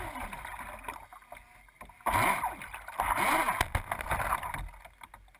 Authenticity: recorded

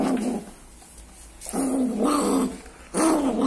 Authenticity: recorded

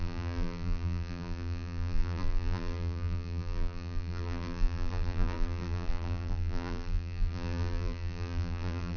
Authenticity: remade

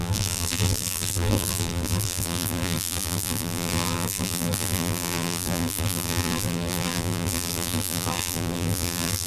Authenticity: remade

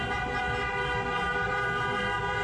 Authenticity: recorded